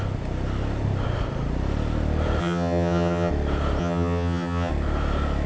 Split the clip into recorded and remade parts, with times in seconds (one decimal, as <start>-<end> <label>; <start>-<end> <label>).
0.0-2.4 recorded; 2.4-3.3 remade; 3.3-3.8 recorded; 3.8-4.7 remade; 4.7-5.5 recorded

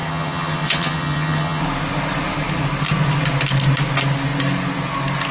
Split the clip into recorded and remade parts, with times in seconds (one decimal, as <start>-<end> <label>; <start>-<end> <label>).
0.0-1.6 remade; 1.6-5.3 recorded